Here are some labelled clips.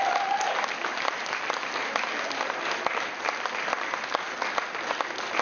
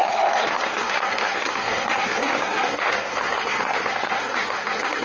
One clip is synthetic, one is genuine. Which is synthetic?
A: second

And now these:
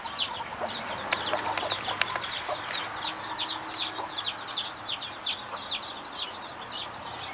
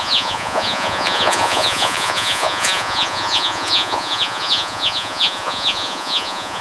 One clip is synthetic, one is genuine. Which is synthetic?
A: second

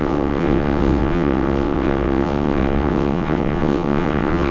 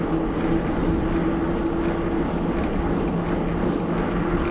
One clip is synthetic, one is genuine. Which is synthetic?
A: first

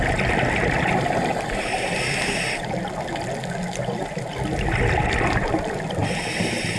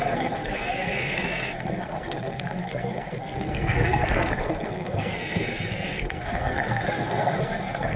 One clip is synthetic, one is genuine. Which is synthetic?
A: second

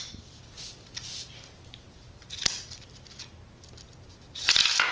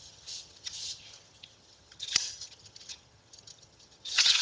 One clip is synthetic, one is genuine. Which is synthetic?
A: second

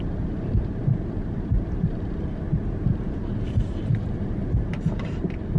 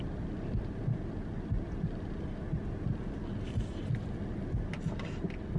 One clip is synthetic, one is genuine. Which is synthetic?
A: first